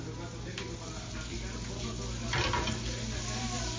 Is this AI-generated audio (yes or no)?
no